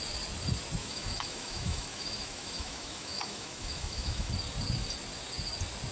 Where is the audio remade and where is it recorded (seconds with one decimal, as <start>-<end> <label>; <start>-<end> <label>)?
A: 0.0-0.8 recorded; 0.8-4.3 remade; 4.3-5.9 recorded